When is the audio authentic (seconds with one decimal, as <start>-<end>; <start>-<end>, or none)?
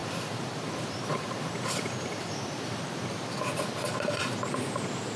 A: 3.1-5.2